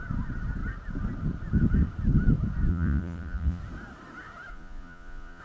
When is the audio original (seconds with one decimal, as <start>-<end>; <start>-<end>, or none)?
0.0-2.7; 3.6-4.5